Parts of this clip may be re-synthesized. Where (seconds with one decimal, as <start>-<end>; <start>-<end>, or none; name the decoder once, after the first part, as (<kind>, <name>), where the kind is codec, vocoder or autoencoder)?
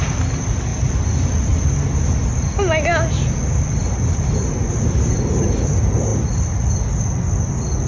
none